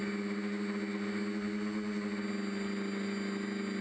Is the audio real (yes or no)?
yes